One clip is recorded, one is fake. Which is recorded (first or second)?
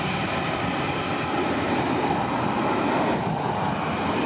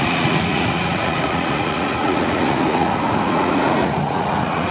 first